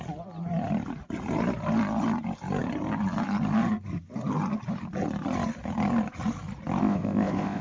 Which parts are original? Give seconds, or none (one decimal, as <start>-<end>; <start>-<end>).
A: 0.0-6.8